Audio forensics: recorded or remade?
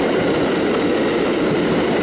recorded